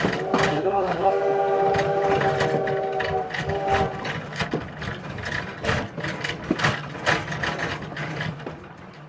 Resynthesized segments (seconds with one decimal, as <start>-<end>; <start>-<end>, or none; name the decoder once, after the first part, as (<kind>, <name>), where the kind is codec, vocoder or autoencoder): 0.5-1.1 (codec, SNAC)